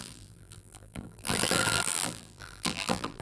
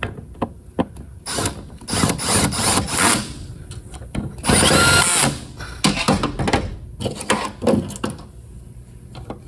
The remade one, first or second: first